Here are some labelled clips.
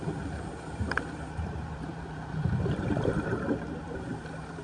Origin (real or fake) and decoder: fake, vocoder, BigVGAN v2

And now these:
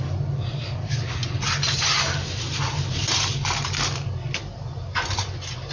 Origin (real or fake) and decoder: real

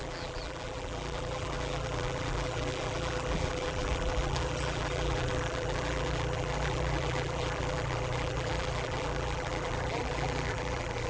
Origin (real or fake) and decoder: fake, vocoder, BigVGAN v2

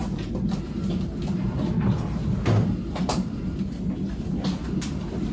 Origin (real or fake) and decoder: real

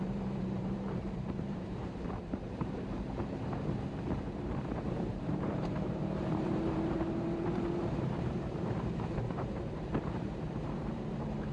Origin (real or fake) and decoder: fake, vocoder, BigVGAN v2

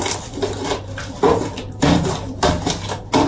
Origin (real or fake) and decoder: fake, vocoder, BigVGAN v2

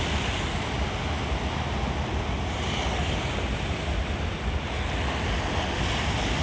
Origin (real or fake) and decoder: real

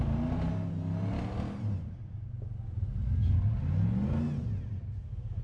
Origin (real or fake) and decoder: real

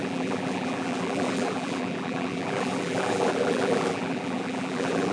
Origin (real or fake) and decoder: fake, vocoder, BigVGAN v2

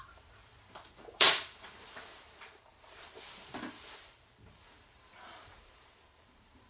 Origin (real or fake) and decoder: fake, vocoder, BigVGAN v2